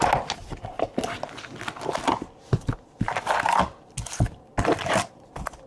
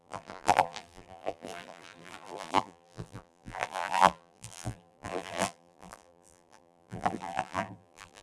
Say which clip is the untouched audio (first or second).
first